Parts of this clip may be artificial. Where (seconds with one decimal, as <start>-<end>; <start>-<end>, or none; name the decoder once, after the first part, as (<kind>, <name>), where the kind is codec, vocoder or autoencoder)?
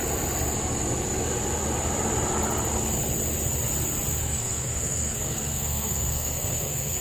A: 4.2-7.0 (codec, SNAC)